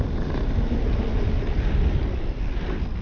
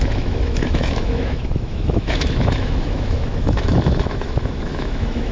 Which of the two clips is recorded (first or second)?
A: first